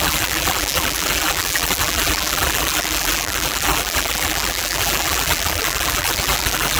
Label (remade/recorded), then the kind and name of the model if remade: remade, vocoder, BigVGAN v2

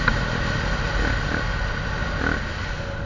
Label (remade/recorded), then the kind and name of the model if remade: recorded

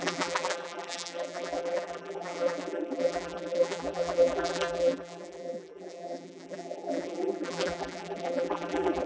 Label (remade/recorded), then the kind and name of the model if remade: remade, vocoder, BigVGAN v2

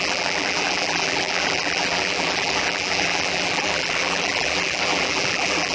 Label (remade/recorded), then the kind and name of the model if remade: remade, vocoder, BigVGAN v2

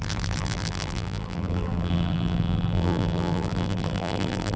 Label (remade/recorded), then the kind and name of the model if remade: remade, vocoder, BigVGAN v2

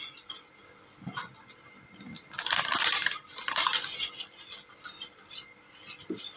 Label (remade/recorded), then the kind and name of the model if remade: recorded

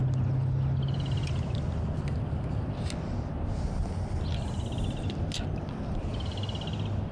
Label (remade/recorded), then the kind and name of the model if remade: recorded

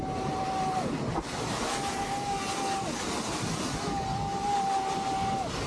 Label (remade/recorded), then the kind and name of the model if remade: recorded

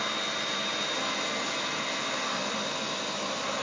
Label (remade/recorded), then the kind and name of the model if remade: recorded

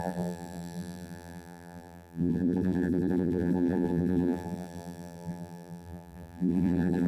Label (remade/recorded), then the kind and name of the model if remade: remade, vocoder, BigVGAN v2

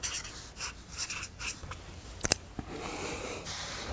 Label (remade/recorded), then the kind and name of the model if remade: remade, vocoder, BigVGAN v2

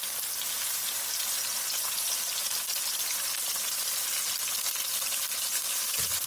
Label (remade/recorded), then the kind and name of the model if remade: recorded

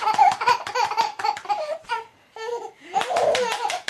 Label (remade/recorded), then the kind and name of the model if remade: remade, vocoder, BigVGAN v2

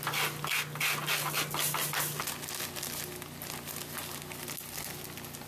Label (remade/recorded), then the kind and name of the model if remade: recorded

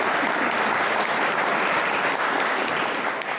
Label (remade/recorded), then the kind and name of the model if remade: recorded